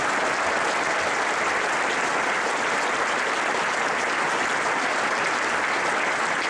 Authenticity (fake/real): real